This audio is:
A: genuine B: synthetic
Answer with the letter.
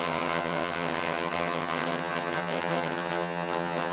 B